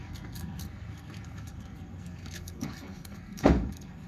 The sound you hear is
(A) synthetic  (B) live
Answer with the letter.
A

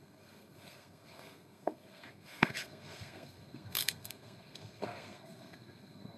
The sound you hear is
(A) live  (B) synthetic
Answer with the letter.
B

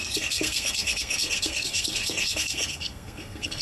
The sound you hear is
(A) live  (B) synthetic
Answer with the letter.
B